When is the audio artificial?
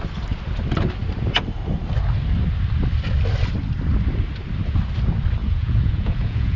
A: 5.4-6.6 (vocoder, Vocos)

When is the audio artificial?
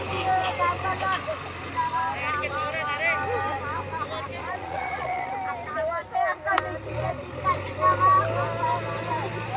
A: 4.4-5.3 (vocoder, Vocos)